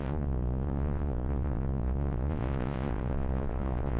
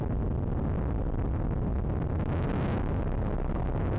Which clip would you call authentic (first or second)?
second